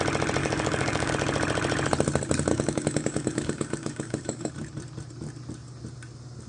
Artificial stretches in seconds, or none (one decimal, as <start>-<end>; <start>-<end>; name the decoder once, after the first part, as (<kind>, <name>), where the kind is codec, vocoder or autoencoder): 0.4-1.1 (codec, DAC); 2.5-4.5